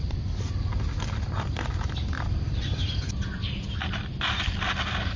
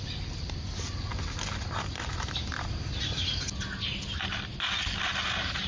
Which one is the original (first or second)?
second